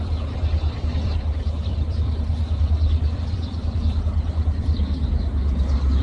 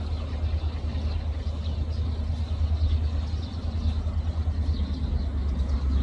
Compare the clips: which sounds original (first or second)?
second